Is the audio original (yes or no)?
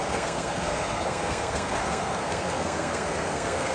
no